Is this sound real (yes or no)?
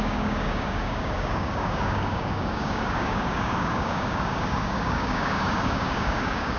no